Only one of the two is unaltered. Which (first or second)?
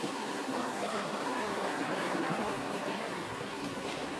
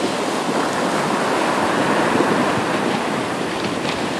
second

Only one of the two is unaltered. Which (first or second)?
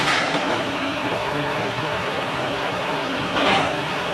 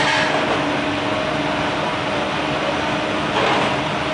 second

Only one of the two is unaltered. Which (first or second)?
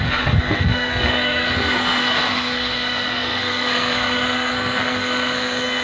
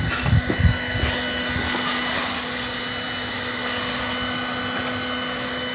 second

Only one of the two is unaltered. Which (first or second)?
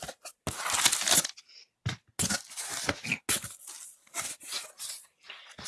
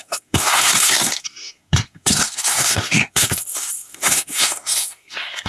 first